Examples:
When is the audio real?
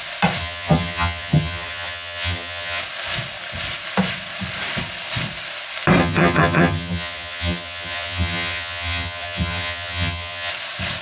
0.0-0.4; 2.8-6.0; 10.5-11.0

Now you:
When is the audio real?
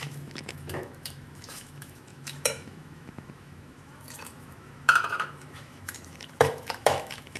none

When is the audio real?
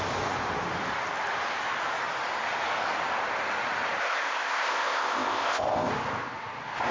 0.0-4.0; 5.9-6.9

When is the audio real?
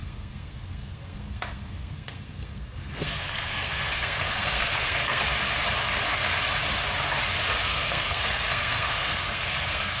5.2-7.7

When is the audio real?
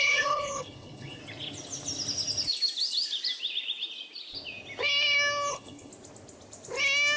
1.2-5.5; 5.9-7.2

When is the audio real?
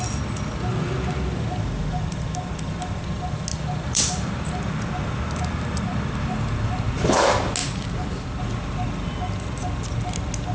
0.0-3.5; 4.6-5.9; 6.9-7.6; 8.4-10.5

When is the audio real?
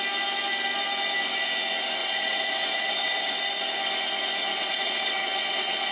0.0-2.0; 3.4-4.5